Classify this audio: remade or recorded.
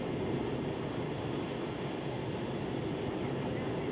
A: recorded